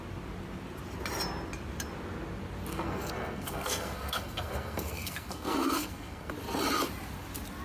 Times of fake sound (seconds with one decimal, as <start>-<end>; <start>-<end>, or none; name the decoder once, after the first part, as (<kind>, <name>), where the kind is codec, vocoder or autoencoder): 2.7-6.3 (codec, SNAC)